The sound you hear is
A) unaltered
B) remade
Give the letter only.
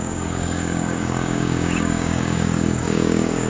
B